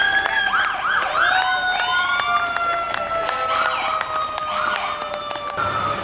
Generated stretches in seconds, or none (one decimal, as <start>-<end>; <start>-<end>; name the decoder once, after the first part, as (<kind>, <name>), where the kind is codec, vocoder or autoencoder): none